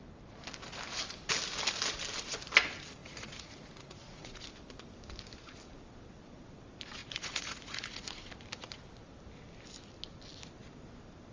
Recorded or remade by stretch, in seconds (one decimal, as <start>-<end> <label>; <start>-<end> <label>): 0.0-3.0 recorded; 3.0-4.4 remade; 4.4-7.0 recorded; 7.0-8.2 remade; 8.2-11.3 recorded